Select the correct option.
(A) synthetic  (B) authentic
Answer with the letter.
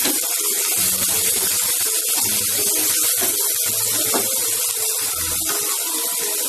B